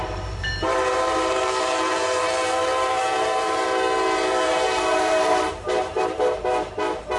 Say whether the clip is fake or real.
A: fake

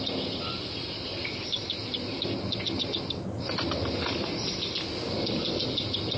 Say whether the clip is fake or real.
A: real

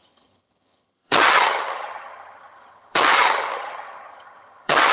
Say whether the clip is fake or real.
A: fake